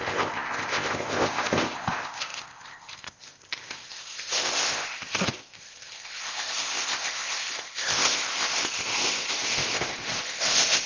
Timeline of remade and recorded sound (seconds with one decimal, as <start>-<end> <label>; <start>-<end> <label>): 0.0-10.9 remade